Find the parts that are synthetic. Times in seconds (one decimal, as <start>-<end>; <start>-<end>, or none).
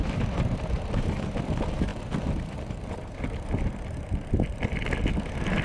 none